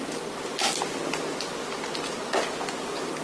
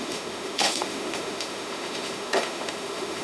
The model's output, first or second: second